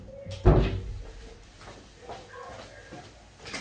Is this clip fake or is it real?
real